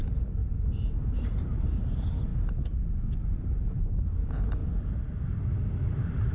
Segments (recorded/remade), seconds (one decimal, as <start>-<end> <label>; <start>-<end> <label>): 0.0-0.4 remade; 0.4-1.2 recorded; 1.2-2.3 remade; 2.3-3.8 recorded; 3.8-4.6 remade; 4.6-5.2 recorded; 5.2-6.3 remade